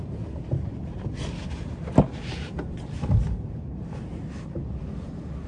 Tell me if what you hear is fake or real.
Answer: real